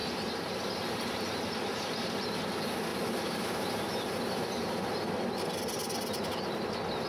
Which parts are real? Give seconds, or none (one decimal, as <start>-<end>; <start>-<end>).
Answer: 2.3-2.9; 5.0-7.1